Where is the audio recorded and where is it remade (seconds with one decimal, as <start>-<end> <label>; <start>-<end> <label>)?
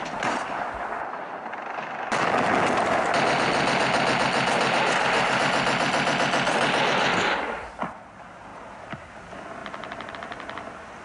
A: 0.0-11.0 recorded